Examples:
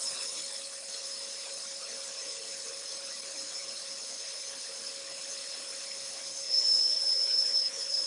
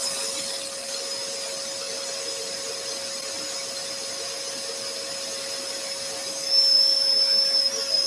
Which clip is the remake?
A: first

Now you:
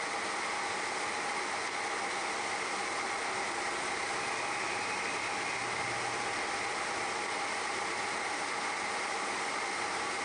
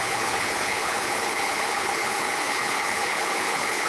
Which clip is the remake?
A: second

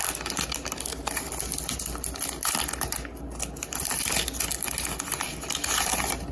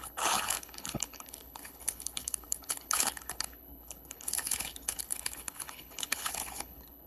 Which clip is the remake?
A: second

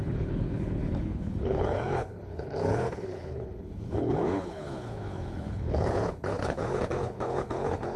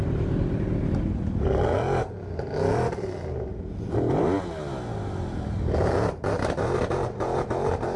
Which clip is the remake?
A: first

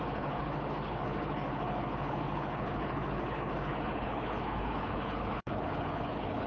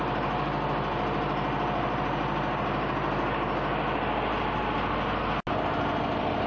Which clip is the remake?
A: first